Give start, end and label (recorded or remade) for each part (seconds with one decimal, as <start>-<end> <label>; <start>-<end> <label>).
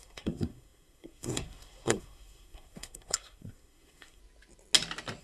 0.0-4.2 remade; 4.2-5.2 recorded